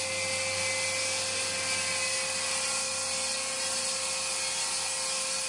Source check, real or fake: real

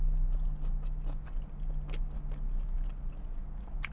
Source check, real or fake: real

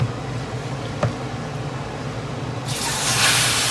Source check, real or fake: real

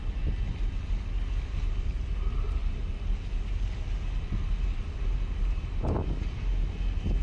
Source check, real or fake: real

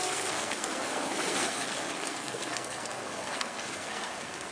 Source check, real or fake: fake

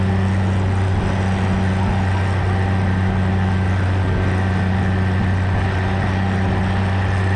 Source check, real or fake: real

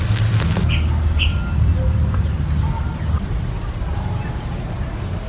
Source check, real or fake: real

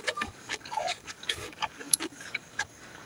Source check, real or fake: fake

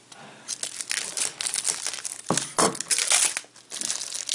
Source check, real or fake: real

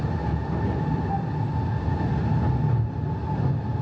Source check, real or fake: real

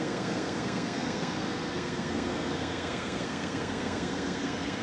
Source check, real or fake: fake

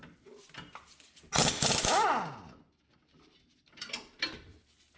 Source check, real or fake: real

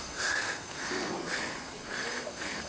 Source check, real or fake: fake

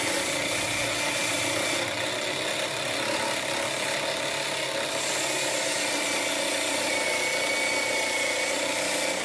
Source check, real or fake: real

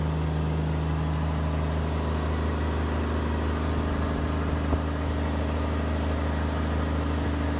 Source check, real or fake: real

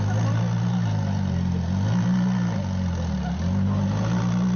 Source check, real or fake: real